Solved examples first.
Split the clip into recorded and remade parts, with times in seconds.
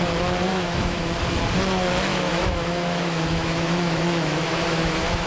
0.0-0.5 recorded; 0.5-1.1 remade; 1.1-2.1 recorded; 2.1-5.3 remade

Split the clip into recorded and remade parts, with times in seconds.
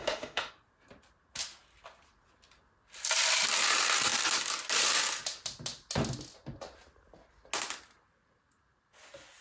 0.0-0.5 remade; 0.5-9.4 recorded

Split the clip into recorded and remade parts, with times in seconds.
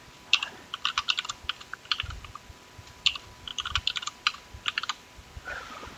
0.0-6.0 recorded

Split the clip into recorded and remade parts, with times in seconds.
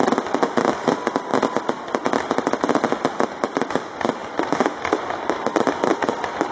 0.0-6.5 recorded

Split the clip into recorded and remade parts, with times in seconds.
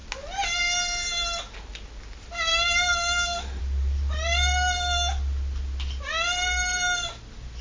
0.0-2.5 recorded; 2.5-3.6 remade; 3.6-7.6 recorded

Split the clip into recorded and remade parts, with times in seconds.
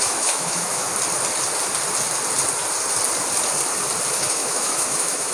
0.0-0.9 remade; 0.9-4.1 recorded; 4.1-5.3 remade